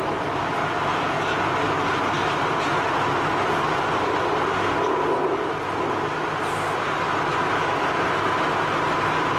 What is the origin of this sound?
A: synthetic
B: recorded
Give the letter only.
B